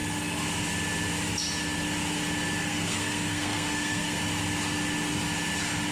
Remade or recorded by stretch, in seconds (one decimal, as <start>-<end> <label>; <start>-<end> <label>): 0.0-2.6 recorded; 2.6-4.2 remade; 4.2-5.9 recorded